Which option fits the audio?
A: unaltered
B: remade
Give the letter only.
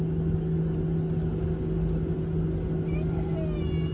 A